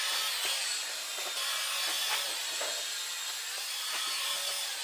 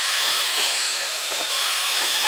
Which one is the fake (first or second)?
second